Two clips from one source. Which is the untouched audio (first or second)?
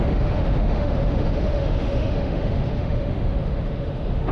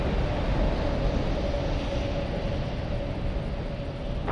second